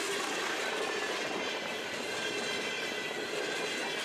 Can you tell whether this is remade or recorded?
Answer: recorded